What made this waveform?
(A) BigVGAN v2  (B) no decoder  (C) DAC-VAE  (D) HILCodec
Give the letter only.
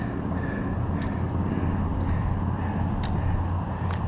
B